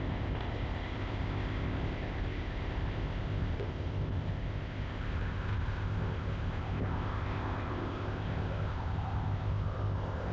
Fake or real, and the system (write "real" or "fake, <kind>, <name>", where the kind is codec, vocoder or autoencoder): fake, codec, ZipCodec